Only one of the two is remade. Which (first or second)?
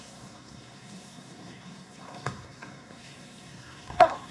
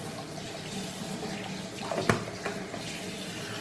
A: first